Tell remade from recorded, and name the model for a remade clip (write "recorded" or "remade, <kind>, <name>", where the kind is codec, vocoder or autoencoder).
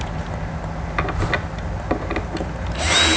recorded